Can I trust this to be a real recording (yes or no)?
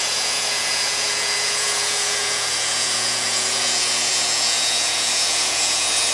no